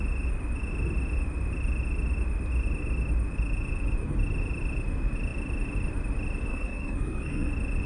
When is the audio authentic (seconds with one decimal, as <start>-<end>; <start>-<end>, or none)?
0.0-6.5; 7.5-7.9